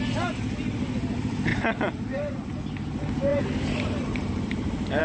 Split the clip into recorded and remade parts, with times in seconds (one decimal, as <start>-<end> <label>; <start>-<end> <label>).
0.0-1.5 recorded; 1.5-2.6 remade; 2.6-3.3 recorded; 3.3-5.0 remade